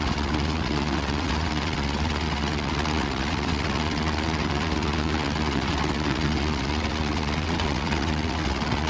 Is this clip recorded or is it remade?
remade